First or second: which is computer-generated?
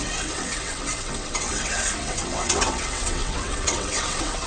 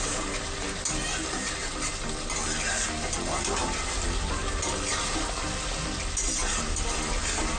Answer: first